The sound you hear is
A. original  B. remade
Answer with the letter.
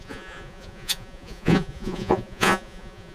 B